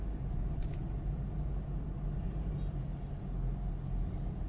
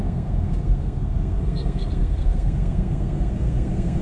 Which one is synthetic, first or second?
second